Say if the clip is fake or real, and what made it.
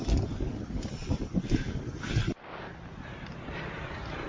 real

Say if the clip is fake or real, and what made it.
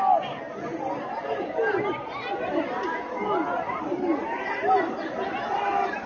real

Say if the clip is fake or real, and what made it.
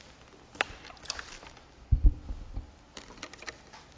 real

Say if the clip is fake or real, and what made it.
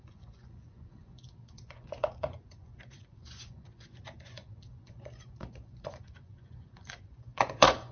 fake, vocoder, Vocos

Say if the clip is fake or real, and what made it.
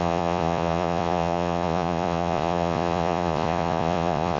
fake, vocoder, Vocos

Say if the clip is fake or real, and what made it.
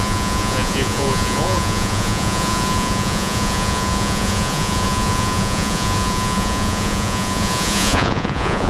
fake, vocoder, Vocos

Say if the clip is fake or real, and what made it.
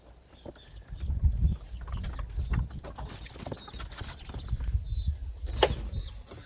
real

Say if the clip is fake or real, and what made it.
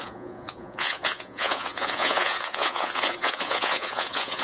fake, vocoder, Vocos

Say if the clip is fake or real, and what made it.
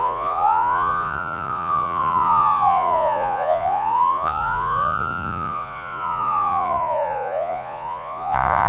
fake, vocoder, Vocos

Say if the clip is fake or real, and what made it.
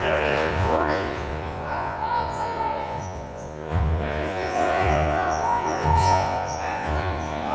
fake, vocoder, Vocos